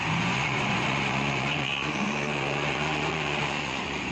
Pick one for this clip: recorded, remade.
remade